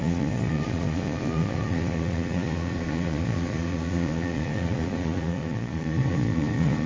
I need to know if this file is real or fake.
fake